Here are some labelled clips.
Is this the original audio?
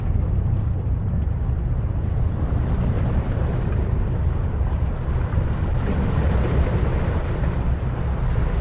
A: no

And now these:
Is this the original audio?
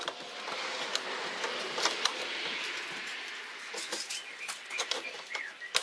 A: yes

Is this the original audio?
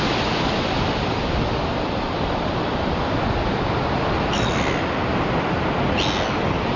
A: yes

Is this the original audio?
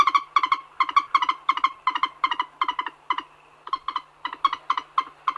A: yes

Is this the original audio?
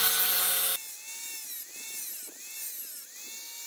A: yes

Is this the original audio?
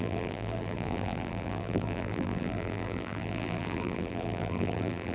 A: no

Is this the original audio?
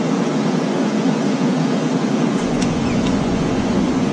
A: no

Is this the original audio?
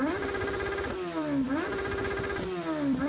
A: no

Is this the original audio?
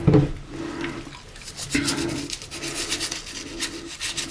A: yes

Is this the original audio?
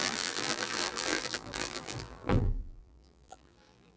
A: no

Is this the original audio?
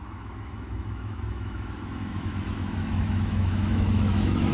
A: no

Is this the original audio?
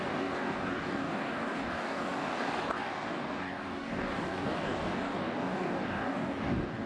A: no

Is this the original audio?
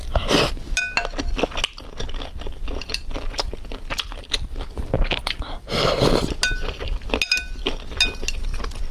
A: yes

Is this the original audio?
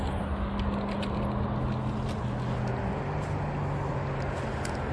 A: yes